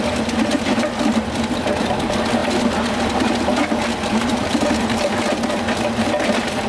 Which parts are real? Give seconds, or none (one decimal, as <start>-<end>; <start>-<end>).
none